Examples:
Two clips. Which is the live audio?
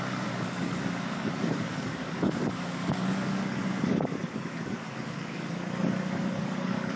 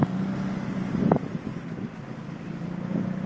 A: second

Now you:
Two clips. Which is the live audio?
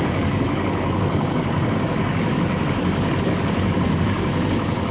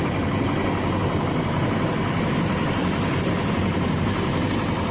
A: second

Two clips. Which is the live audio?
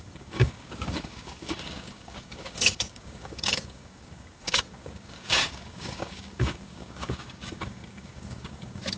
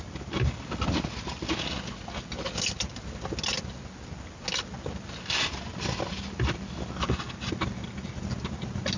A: second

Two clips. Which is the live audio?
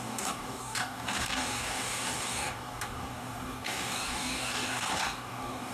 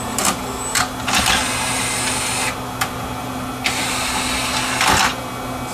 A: second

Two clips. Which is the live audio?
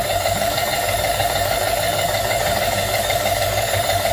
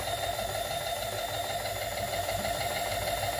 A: second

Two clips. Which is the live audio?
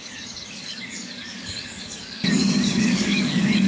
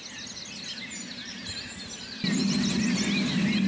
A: second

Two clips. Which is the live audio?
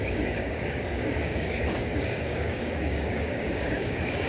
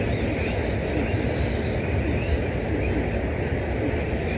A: second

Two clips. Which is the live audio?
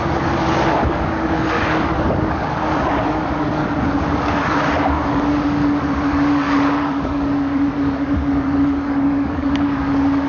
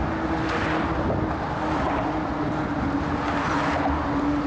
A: second